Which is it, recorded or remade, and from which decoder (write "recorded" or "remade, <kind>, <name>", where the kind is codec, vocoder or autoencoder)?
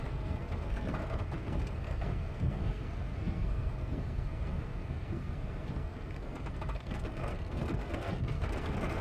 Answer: remade, codec, SNAC